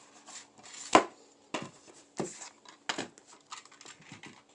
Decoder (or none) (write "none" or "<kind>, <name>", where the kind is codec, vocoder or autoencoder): none